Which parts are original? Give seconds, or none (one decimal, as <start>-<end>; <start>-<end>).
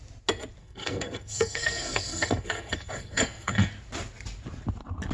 0.0-0.6; 3.7-5.1